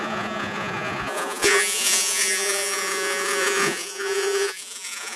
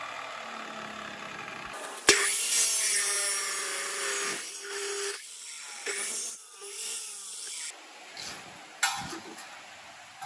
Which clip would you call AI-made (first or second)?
first